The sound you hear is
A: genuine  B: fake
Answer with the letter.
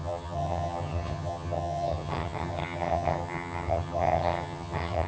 B